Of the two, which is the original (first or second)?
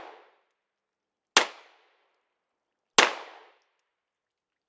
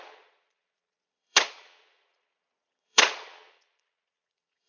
first